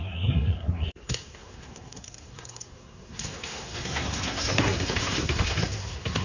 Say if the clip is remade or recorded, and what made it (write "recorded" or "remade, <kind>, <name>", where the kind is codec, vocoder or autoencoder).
remade, codec, SNAC